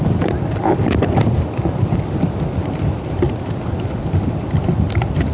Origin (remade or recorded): remade